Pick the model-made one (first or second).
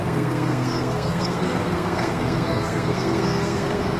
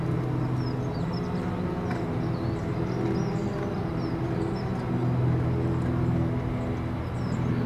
first